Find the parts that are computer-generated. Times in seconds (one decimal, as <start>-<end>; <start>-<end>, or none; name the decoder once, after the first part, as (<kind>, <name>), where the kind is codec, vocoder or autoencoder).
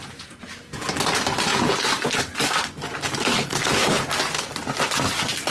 3.3-4.0 (codec, HILCodec)